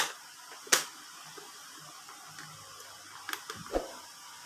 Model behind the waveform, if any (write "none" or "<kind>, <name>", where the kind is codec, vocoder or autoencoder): none